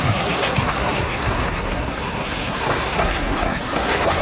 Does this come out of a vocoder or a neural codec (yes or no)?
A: yes